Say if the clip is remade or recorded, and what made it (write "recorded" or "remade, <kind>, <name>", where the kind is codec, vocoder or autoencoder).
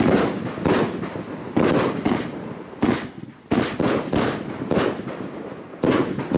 recorded